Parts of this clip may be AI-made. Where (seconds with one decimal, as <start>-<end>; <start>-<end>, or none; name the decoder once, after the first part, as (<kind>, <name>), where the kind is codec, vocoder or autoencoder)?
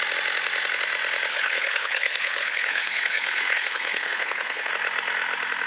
1.3-4.7 (codec, HILCodec)